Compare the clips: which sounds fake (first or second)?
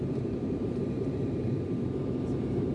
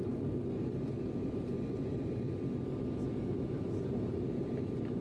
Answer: first